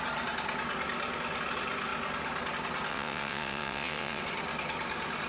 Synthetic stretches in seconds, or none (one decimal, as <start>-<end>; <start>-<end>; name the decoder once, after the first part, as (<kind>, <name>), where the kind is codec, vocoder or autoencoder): 2.9-4.2 (vocoder, WaveNeXt)